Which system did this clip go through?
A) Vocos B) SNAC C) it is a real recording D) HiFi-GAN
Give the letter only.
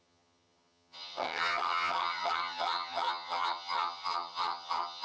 D